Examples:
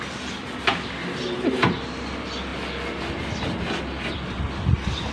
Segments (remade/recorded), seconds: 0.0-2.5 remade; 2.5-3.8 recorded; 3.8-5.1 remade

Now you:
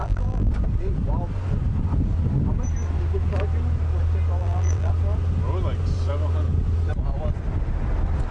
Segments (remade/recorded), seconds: 0.0-0.5 remade; 0.5-4.4 recorded; 4.4-4.9 remade; 4.9-8.3 recorded

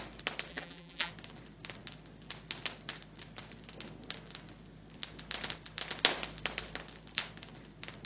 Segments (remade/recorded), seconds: 0.0-0.5 recorded; 0.5-1.1 remade; 1.1-8.1 recorded

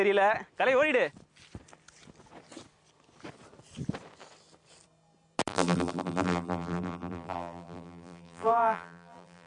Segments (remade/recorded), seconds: 0.0-5.5 recorded; 5.5-9.5 remade

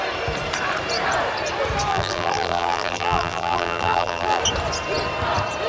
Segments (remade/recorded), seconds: 0.0-1.9 recorded; 1.9-4.4 remade; 4.4-5.7 recorded

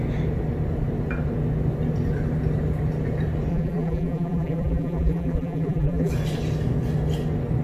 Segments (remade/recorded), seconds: 0.0-3.5 recorded; 3.5-6.1 remade; 6.1-7.6 recorded

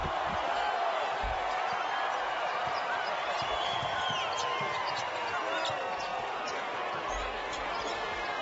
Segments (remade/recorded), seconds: 0.0-2.1 recorded; 2.1-4.0 remade; 4.0-8.4 recorded

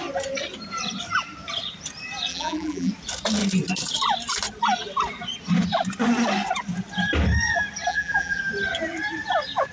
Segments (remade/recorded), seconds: 0.0-2.3 recorded; 2.3-2.9 remade; 2.9-7.9 recorded; 7.9-8.4 remade; 8.4-9.7 recorded